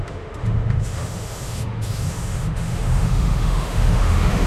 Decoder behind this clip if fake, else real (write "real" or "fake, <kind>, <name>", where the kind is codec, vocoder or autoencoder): fake, autoencoder, DAC-VAE